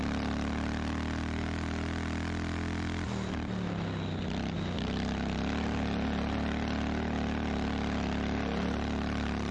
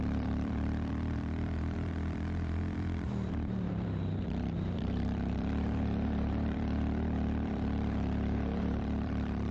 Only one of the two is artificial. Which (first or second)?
second